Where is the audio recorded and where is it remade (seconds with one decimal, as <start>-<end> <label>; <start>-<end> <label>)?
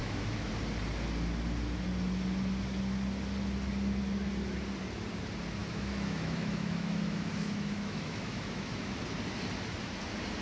0.0-0.5 remade; 0.5-5.6 recorded; 5.6-9.0 remade; 9.0-10.4 recorded